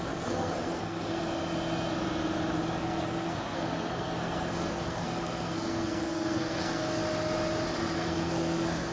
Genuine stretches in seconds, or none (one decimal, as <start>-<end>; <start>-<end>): 1.2-2.8; 7.0-7.8